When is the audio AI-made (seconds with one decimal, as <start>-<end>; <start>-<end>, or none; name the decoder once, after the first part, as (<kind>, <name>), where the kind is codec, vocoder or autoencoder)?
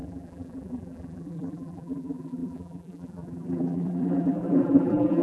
0.0-5.2 (vocoder, BigVGAN v2)